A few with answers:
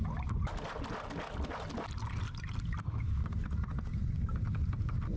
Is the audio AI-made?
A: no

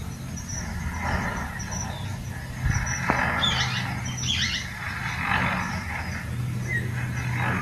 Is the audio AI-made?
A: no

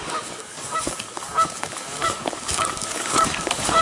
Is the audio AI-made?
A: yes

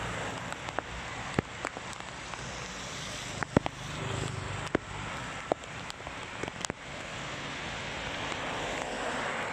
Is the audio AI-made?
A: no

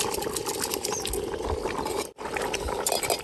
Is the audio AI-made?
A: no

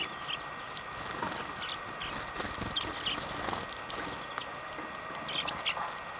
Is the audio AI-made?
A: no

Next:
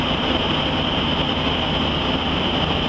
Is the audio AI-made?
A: no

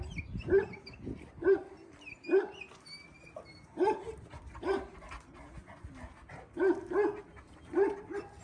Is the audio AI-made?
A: no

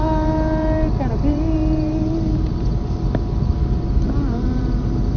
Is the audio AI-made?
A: yes